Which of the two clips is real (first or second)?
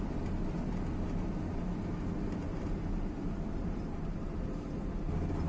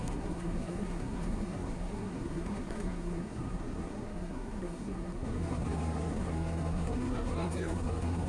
first